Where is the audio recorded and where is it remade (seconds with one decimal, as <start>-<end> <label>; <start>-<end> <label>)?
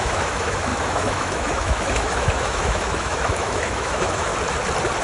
0.0-4.3 remade; 4.3-5.0 recorded